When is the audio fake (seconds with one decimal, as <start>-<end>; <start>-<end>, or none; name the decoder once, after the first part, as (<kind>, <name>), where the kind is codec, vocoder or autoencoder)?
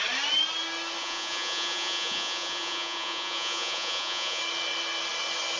1.0-4.4 (vocoder, Vocos)